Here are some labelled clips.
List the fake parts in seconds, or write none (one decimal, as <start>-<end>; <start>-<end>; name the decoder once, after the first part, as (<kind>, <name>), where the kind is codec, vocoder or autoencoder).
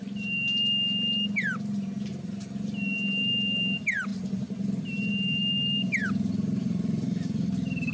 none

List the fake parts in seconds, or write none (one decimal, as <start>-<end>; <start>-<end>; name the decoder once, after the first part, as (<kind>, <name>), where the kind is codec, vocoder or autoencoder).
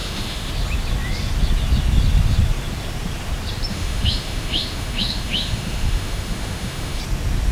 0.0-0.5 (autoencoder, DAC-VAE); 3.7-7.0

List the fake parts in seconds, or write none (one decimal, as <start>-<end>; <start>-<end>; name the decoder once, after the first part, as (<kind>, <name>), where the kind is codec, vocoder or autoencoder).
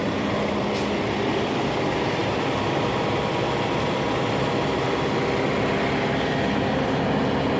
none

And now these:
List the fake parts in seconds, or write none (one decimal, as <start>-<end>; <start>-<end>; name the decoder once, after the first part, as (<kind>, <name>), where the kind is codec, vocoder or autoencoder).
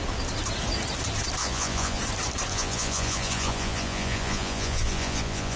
1.4-2.0 (vocoder, Vocos); 2.5-5.6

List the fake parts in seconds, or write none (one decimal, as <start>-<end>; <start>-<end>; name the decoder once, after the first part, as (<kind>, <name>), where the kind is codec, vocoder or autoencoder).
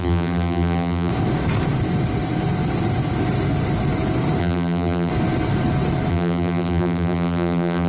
0.0-1.1 (vocoder, BigVGAN v2); 4.4-5.1; 6.1-7.9